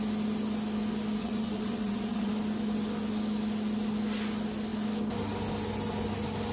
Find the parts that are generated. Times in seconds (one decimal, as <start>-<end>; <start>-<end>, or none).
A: 1.2-2.3

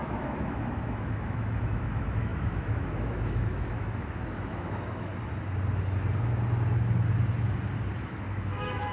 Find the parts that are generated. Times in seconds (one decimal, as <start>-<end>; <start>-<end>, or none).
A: 0.0-5.1; 8.0-8.9

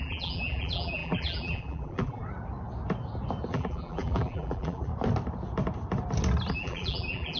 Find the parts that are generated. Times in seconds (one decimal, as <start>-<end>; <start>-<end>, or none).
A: 0.0-2.2; 3.5-4.9; 6.5-7.4

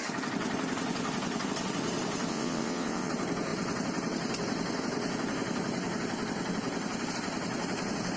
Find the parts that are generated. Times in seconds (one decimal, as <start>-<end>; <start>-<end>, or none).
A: 2.3-3.1

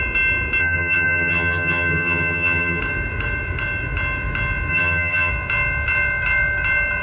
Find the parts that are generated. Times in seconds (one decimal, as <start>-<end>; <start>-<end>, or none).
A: 0.6-2.8; 4.7-5.3

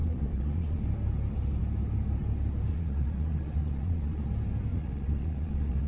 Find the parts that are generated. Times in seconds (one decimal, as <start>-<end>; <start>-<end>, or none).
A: 0.0-0.8; 2.7-4.3; 4.7-5.9

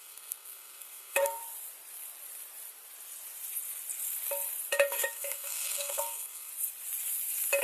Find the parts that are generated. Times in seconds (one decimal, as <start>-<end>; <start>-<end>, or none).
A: 0.0-1.4; 4.7-6.5

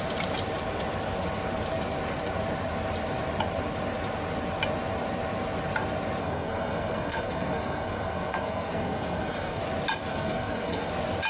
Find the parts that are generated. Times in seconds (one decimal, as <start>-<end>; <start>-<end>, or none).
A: 6.2-9.6; 10.1-10.9